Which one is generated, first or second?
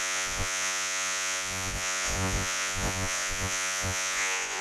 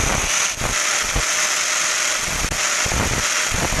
first